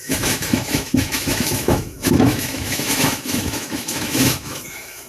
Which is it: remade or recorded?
remade